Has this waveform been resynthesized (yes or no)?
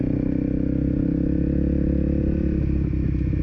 no